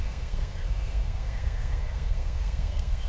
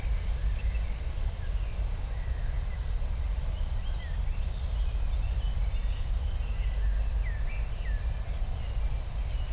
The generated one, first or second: first